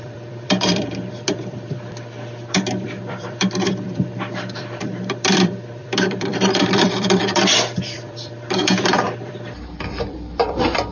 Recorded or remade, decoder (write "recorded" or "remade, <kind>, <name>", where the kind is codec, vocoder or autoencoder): remade, vocoder, BigVGAN v2